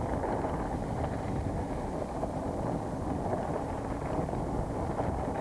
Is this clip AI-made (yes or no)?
no